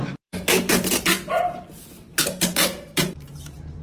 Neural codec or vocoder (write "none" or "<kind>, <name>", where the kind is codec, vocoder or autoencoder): vocoder, BigVGAN v2